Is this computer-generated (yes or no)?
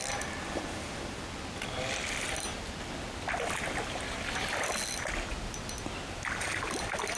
no